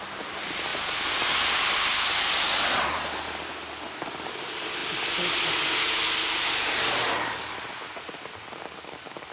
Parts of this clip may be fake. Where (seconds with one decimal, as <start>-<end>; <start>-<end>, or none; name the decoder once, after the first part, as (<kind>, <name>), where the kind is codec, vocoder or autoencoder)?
none